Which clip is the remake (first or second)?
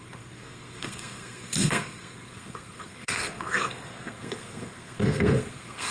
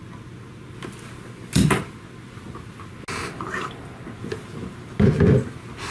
first